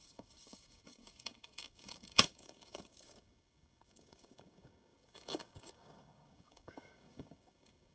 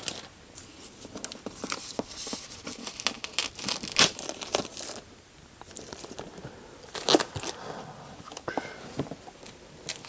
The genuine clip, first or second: second